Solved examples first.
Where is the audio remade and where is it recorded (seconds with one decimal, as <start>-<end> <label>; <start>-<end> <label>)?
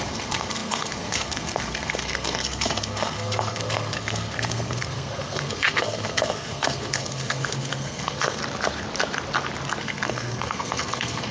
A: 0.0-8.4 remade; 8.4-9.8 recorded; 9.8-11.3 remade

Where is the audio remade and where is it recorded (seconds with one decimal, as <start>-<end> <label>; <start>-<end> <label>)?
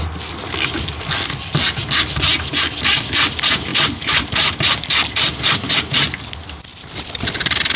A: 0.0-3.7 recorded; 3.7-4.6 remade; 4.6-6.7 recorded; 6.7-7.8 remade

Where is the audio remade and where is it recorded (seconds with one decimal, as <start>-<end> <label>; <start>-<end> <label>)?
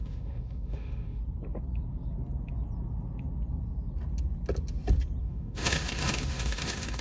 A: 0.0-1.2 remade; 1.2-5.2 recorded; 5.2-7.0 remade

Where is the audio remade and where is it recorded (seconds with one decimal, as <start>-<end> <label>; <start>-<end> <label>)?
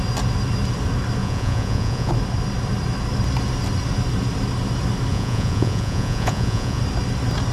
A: 0.0-1.2 recorded; 1.2-2.1 remade; 2.1-5.1 recorded; 5.1-6.8 remade; 6.8-7.5 recorded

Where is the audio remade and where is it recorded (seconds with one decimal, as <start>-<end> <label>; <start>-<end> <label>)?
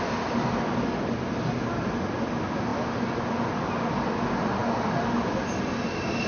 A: 0.0-6.3 recorded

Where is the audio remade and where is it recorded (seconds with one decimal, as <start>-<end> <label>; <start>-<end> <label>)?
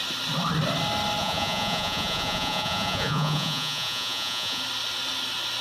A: 0.0-1.2 recorded; 1.2-4.6 remade; 4.6-5.6 recorded